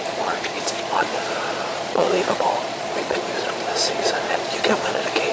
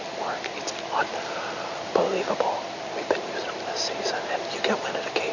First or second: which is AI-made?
first